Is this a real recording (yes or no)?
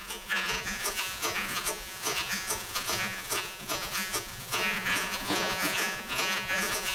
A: no